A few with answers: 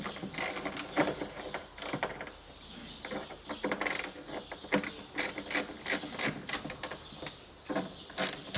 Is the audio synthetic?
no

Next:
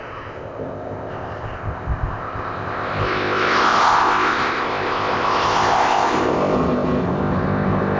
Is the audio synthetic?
yes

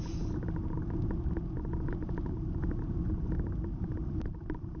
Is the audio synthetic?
no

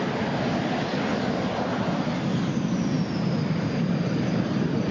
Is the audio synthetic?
no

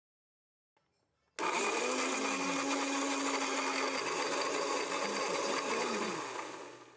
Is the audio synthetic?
no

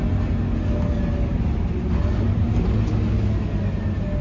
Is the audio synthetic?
no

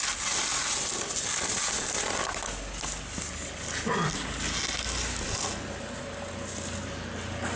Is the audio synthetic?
no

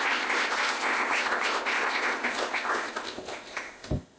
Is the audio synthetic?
yes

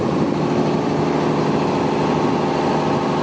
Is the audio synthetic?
no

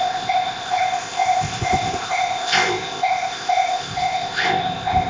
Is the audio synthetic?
yes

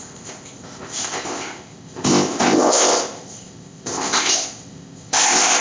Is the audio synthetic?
yes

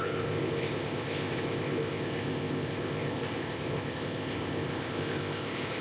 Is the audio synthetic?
yes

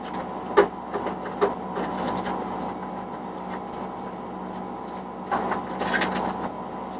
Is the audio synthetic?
no